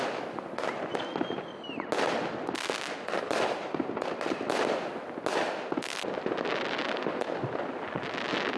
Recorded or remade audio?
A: recorded